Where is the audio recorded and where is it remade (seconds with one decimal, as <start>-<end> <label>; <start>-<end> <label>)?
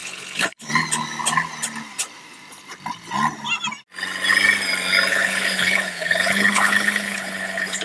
0.0-0.7 remade; 0.7-5.1 recorded; 5.1-7.8 remade